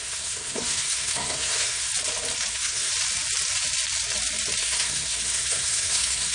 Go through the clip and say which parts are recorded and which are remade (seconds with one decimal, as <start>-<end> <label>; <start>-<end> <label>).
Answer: 0.0-1.9 remade; 1.9-2.5 recorded; 2.5-2.9 remade; 2.9-4.6 recorded; 4.6-6.3 remade